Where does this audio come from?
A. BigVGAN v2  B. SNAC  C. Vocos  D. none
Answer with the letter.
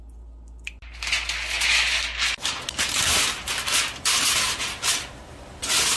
D